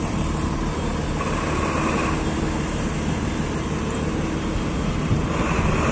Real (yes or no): yes